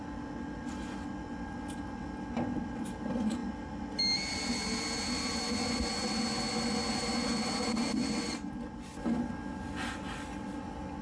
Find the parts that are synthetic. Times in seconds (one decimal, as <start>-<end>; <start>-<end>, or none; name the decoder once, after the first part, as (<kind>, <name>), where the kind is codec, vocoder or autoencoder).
none